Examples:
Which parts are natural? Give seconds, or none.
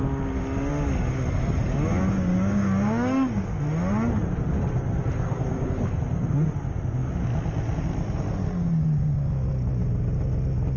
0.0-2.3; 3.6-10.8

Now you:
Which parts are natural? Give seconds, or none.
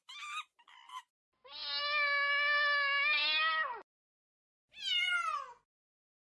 0.0-6.2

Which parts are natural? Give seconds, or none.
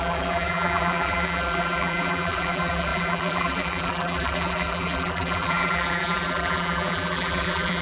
none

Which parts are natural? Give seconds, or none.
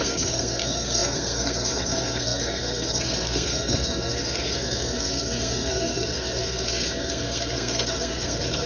none